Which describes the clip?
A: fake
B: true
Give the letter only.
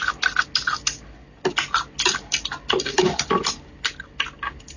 B